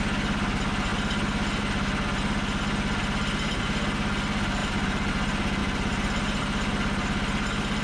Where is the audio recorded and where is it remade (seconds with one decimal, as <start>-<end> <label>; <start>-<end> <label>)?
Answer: 0.0-4.6 recorded; 4.6-5.1 remade; 5.1-5.6 recorded; 5.6-6.4 remade; 6.4-7.8 recorded